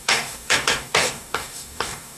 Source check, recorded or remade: remade